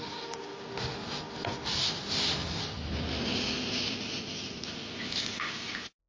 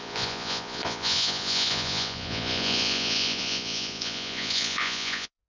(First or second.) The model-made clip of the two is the second